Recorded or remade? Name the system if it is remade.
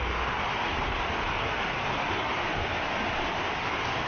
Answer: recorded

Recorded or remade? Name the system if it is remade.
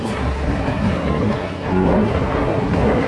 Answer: remade, codec, SNAC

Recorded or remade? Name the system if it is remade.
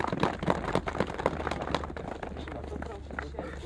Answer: recorded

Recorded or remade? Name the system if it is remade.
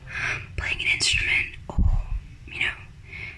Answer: recorded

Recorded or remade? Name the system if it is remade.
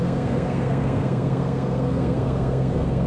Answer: remade, codec, SNAC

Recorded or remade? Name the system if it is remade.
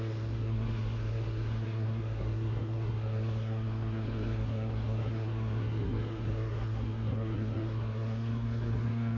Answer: remade, codec, SNAC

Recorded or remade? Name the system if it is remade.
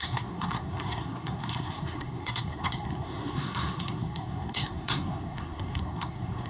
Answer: remade, codec, SNAC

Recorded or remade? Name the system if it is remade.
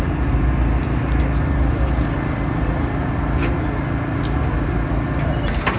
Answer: recorded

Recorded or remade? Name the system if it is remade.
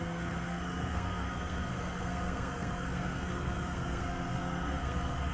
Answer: remade, codec, SNAC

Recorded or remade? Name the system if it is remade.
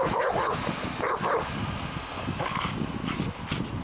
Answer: recorded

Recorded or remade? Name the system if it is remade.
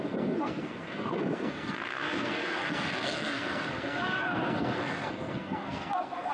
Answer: remade, codec, SNAC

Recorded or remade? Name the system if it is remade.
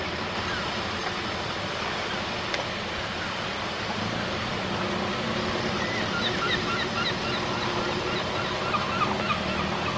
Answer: recorded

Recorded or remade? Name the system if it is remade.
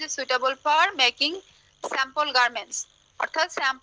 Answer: recorded